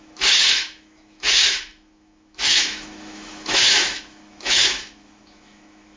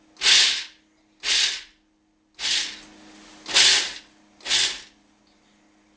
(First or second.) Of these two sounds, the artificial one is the first